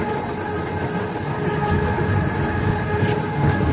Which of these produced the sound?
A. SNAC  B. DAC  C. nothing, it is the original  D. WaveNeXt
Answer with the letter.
C